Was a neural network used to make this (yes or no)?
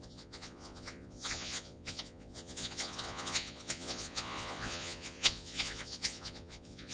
yes